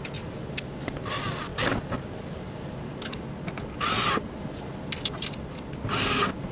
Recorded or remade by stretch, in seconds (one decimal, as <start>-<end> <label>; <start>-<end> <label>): 0.0-6.5 recorded